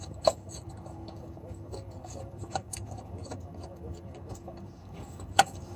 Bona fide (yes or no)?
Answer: no